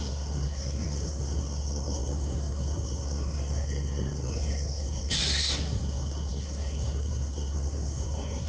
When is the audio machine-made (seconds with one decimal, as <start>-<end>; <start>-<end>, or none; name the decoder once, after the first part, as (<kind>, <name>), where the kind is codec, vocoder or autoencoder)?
0.0-8.5 (codec, SNAC)

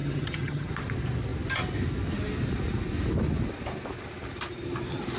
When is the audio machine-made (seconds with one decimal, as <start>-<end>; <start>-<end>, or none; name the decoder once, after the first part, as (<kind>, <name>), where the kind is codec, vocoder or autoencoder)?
0.0-0.7 (vocoder, HiFi-GAN)

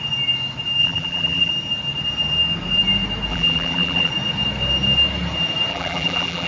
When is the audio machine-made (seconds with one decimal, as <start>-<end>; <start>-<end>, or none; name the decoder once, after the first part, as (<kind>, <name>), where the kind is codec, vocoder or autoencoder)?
0.8-1.5 (vocoder, BigVGAN v2); 3.3-4.1; 5.7-6.5

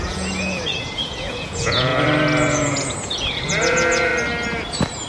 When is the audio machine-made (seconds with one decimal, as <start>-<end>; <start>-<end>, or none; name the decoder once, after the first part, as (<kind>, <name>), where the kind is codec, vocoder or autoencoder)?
0.0-1.9 (vocoder, Vocos); 2.6-4.1

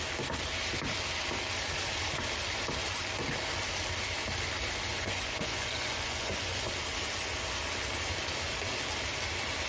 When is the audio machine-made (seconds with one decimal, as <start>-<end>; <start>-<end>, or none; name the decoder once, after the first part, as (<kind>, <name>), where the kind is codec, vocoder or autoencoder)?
4.9-6.7 (vocoder, Vocos)

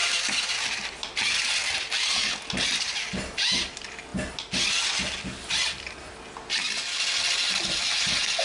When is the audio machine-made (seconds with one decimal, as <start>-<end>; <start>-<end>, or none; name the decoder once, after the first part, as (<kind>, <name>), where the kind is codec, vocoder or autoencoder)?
none